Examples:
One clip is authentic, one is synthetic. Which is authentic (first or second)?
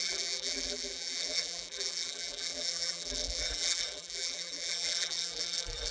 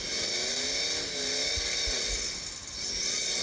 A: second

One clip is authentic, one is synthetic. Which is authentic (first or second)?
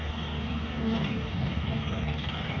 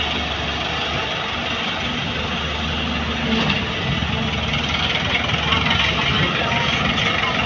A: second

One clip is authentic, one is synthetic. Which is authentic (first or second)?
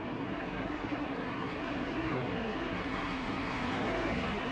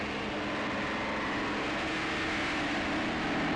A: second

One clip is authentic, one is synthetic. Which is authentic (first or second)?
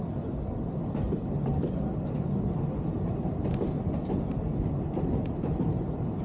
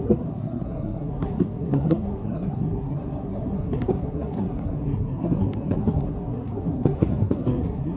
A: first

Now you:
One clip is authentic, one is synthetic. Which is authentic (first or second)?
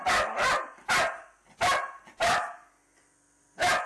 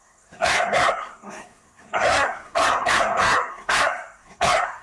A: first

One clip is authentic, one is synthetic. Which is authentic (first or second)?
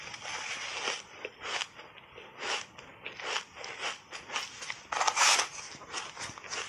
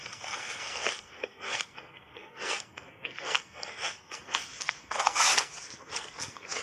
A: first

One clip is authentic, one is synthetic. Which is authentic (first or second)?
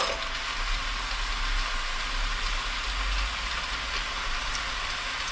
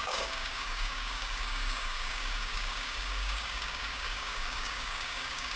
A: first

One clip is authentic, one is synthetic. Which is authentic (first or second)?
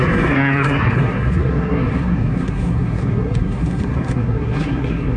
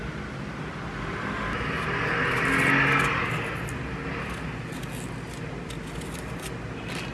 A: second